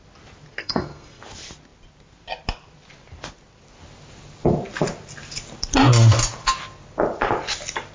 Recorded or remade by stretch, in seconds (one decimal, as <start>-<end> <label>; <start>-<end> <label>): 0.0-0.6 recorded; 0.6-1.2 remade; 1.2-7.9 recorded